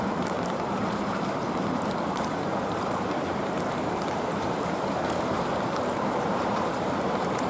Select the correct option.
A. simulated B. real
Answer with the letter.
A